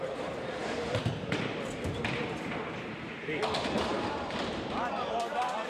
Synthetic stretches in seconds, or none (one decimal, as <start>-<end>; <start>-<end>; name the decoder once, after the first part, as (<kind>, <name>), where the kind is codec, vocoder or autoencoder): 0.0-5.7 (vocoder, BigVGAN v2)